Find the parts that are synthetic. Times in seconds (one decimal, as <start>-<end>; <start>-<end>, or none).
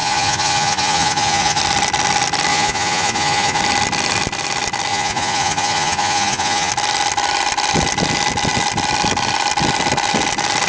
0.0-1.6; 2.5-3.6; 4.9-6.7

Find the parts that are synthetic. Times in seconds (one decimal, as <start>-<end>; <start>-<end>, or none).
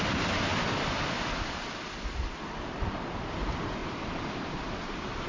3.8-5.3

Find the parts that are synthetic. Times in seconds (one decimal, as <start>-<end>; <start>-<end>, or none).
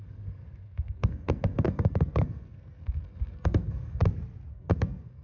0.0-4.0; 4.5-5.2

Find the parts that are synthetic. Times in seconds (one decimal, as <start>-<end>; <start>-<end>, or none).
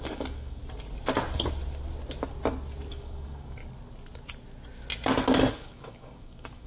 0.0-0.6; 2.9-3.6; 5.5-6.7